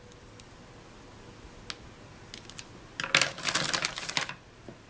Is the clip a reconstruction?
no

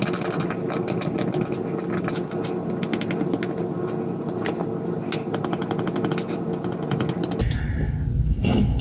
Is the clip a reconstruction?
no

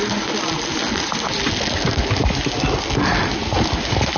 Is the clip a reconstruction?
no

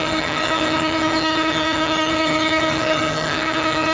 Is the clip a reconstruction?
yes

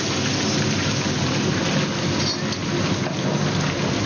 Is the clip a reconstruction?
no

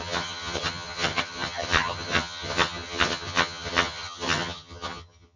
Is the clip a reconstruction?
yes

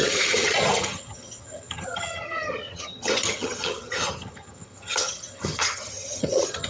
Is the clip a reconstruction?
yes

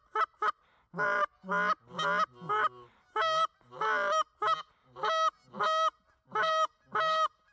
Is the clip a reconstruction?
no